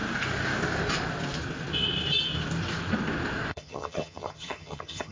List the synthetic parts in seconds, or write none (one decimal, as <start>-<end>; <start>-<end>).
3.5-5.1